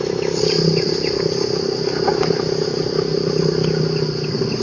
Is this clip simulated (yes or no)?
no